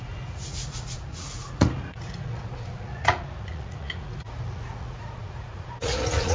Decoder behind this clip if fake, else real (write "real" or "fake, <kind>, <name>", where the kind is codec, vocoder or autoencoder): fake, vocoder, Vocos